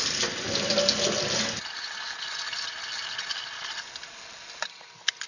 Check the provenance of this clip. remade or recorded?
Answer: recorded